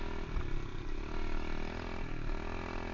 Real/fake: real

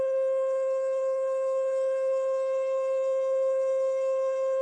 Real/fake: fake